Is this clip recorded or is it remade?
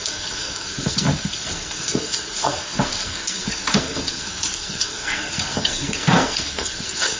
remade